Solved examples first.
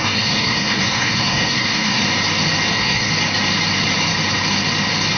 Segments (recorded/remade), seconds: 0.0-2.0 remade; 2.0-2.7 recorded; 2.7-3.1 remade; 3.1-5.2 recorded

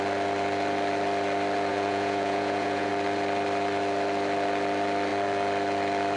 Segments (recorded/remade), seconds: 0.0-1.7 recorded; 1.7-2.9 remade; 2.9-6.2 recorded